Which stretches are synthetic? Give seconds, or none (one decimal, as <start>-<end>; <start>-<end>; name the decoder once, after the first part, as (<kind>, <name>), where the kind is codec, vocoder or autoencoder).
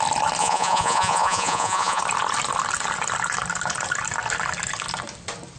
0.4-2.0 (vocoder, Vocos)